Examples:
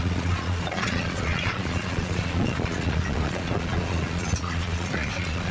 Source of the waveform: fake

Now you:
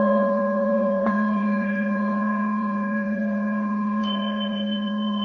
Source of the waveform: fake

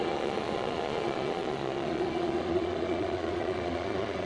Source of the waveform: fake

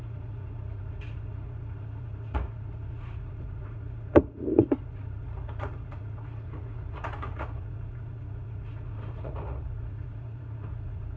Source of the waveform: fake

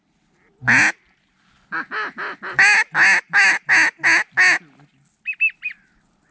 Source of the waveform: real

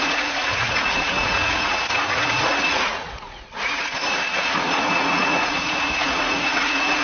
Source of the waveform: fake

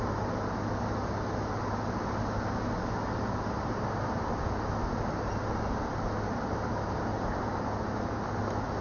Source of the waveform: real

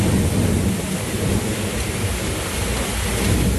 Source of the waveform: real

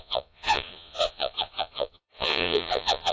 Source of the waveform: fake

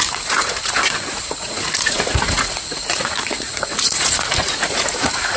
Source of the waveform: fake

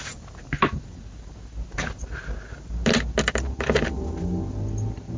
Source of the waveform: real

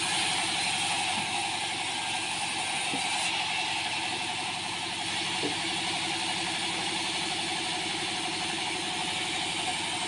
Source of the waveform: real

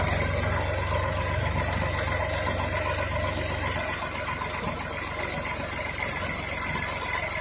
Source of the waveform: real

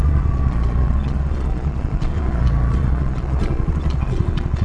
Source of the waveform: fake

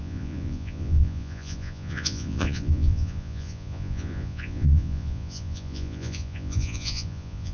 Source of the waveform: fake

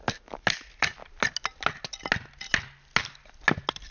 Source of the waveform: real